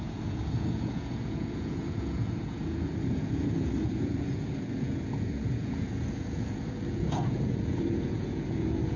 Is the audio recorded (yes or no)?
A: no